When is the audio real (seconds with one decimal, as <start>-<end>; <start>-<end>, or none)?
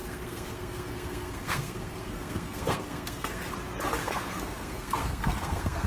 3.5-4.0